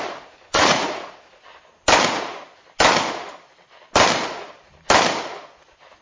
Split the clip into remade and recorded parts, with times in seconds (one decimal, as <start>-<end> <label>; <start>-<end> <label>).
0.0-0.5 recorded; 0.5-1.4 remade; 1.4-6.0 recorded